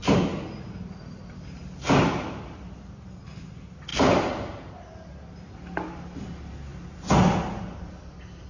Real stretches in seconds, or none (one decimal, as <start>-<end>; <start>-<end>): 0.0-8.5